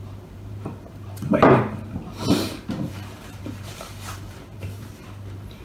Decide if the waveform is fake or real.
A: fake